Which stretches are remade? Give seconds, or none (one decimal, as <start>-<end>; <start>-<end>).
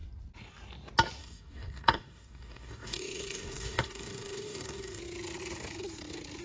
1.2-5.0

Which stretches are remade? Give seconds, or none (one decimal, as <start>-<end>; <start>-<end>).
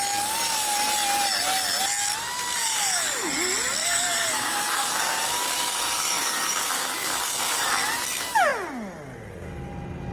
2.6-3.3; 3.8-7.7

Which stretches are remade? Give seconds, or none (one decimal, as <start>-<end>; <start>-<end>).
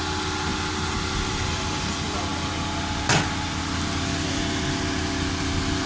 none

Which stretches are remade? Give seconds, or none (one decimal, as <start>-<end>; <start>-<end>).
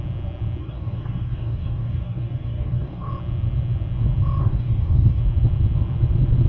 0.6-3.1; 4.4-5.2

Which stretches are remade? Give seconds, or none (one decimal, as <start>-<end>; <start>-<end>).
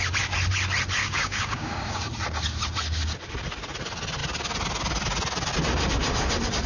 1.0-2.0